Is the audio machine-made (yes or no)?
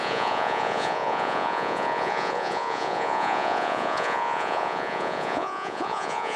yes